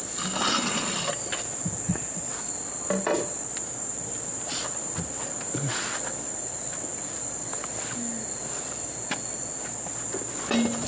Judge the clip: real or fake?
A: real